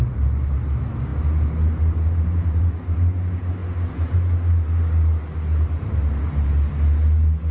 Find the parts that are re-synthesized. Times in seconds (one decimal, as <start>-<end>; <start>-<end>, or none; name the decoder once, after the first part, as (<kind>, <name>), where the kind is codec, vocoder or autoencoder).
none